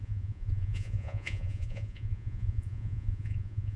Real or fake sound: fake